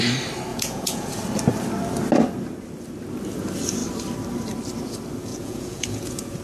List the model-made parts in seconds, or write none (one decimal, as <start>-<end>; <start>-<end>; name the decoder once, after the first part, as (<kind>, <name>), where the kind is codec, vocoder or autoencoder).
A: 0.5-1.1 (vocoder, Vocos); 5.3-6.4